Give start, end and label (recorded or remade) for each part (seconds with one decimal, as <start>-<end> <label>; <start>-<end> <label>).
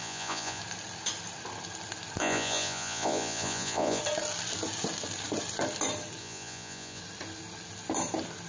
0.0-0.6 remade; 0.6-2.2 recorded; 2.2-4.0 remade; 4.0-6.2 recorded; 6.2-7.0 remade; 7.0-8.5 recorded